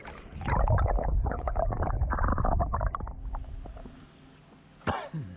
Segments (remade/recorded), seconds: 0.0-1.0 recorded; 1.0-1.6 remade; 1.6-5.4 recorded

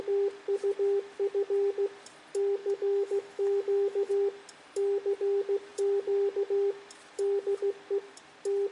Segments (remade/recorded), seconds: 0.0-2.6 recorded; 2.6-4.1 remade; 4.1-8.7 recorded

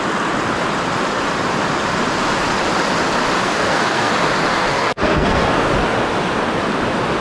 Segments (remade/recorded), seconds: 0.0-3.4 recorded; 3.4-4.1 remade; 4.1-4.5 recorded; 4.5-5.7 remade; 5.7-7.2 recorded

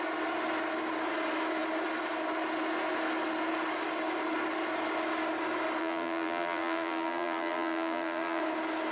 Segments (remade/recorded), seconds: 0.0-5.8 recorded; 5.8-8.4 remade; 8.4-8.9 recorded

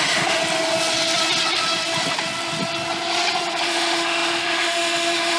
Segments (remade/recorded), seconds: 0.0-0.4 remade; 0.4-3.6 recorded; 3.6-5.4 remade